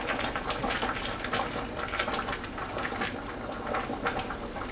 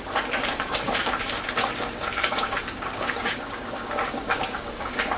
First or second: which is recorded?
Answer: first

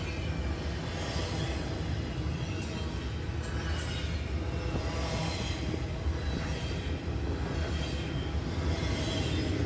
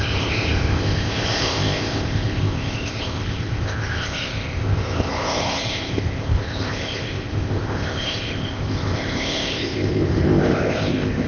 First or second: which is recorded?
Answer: first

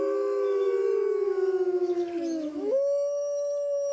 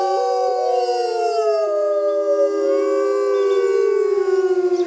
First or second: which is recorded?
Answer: second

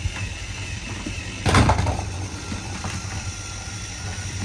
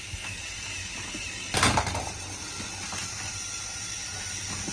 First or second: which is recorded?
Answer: second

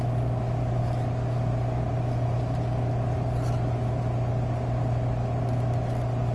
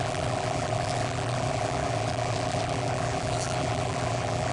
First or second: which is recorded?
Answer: first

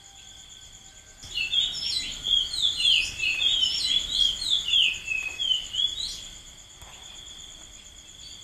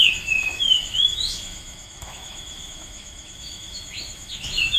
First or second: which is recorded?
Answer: first